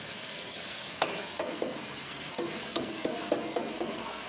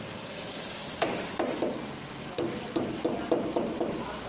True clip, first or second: second